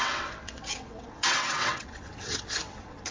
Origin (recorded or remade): remade